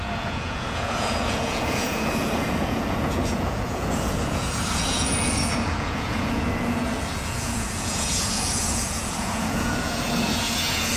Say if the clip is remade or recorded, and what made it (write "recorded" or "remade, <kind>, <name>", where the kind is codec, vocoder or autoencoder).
remade, vocoder, Vocos